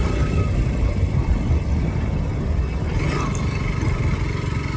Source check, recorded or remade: recorded